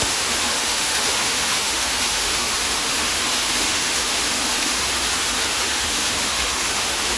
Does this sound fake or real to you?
fake